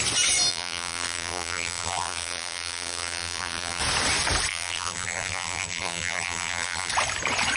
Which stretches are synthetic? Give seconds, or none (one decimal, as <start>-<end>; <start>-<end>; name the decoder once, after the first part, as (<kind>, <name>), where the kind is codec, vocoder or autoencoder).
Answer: 0.5-3.8 (vocoder, BigVGAN v2); 4.5-6.9